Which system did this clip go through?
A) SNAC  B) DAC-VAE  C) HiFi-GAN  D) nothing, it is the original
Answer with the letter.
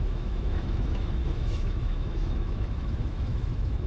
B